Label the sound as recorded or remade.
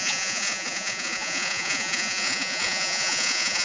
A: remade